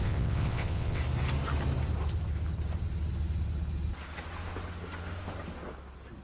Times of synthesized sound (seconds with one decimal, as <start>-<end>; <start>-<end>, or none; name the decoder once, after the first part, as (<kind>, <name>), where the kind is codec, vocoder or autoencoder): 0.0-1.0 (vocoder, WaveNeXt)